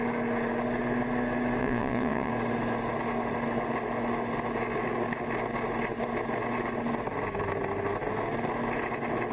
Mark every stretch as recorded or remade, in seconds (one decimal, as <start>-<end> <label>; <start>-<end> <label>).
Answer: 0.0-1.6 recorded; 1.6-2.3 remade; 2.3-9.3 recorded

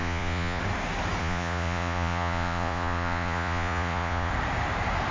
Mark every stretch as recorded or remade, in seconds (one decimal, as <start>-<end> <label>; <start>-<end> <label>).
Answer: 0.0-0.6 remade; 0.6-1.2 recorded; 1.2-4.3 remade; 4.3-5.1 recorded

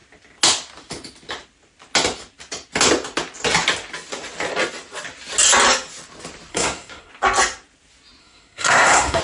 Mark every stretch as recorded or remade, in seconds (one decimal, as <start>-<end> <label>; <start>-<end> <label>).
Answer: 0.0-6.5 recorded; 6.5-7.1 remade; 7.1-8.2 recorded; 8.2-9.2 remade

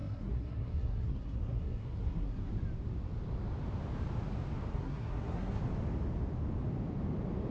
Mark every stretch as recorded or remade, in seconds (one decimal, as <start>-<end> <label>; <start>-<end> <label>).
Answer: 0.0-2.5 remade; 2.5-4.7 recorded; 4.7-5.6 remade; 5.6-7.5 recorded

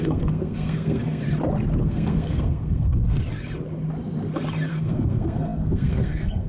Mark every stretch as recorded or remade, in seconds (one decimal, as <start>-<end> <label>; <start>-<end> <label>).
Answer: 0.0-1.2 remade; 1.2-1.8 recorded; 1.8-3.2 remade; 3.2-4.7 recorded; 4.7-6.5 remade

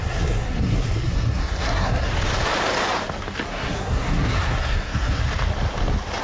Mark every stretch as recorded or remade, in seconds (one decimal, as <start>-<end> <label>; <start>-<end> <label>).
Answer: 0.0-2.1 remade; 2.1-3.5 recorded; 3.5-5.2 remade; 5.2-6.2 recorded